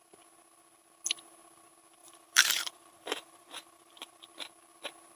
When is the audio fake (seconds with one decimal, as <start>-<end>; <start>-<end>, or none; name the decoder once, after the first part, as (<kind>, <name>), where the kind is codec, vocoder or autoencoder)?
2.0-4.2 (vocoder, BigVGAN v2)